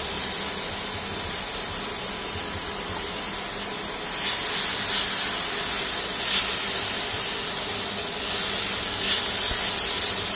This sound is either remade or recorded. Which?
recorded